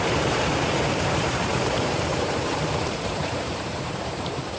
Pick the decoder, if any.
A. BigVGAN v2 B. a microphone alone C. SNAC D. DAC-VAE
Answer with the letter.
A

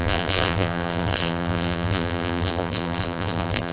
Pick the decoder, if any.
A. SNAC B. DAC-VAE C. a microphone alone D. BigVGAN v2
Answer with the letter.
D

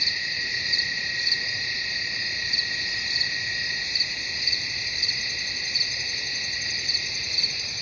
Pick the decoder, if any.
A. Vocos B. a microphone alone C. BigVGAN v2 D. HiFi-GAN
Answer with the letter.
C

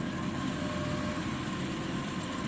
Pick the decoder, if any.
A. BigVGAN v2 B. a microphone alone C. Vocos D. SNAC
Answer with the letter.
B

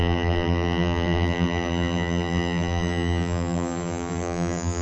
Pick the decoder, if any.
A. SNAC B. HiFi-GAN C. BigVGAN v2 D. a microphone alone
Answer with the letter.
C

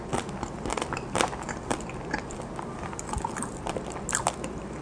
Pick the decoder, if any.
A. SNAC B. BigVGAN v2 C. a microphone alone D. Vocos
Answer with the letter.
C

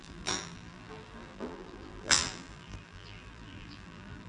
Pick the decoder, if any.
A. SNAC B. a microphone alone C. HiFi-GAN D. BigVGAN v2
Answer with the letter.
D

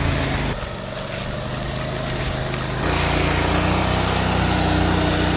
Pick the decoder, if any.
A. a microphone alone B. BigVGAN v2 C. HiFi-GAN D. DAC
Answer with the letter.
A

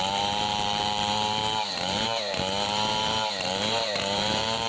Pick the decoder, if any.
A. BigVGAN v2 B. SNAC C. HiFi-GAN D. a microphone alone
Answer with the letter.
A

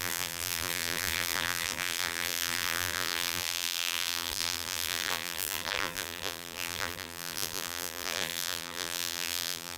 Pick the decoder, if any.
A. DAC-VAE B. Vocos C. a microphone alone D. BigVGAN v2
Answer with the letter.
D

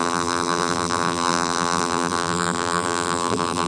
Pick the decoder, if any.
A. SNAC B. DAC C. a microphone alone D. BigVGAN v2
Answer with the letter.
D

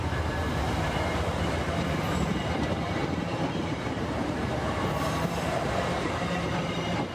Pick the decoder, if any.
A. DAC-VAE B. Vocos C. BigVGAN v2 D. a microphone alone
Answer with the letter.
C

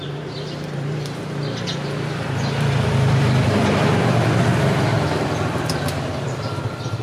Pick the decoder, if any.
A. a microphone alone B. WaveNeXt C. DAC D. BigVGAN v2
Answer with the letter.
D